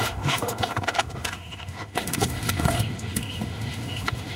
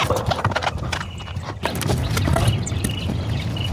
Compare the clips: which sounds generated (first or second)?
first